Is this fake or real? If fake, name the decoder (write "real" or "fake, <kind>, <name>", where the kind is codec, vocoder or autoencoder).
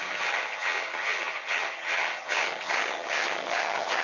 fake, vocoder, HiFi-GAN